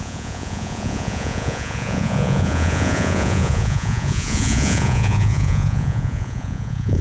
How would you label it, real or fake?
fake